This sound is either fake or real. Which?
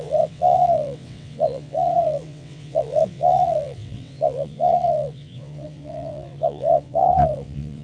fake